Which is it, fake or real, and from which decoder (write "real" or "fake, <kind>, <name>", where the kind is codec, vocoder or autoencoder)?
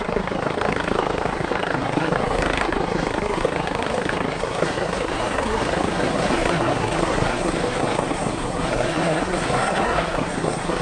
fake, codec, SNAC